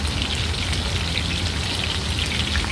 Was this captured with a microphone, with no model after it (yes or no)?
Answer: yes